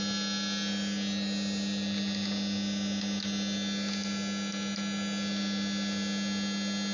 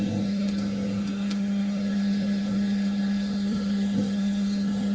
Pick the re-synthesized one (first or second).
second